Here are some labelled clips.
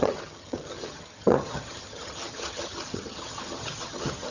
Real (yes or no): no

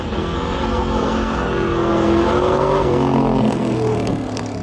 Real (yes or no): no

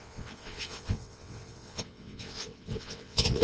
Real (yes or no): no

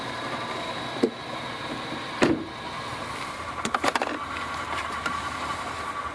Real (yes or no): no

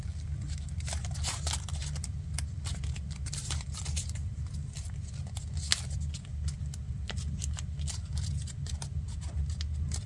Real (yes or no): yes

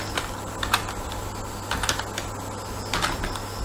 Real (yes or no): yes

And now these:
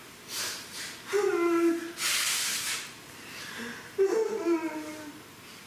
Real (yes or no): no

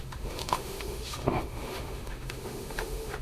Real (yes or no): no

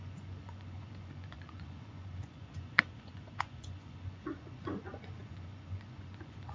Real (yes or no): no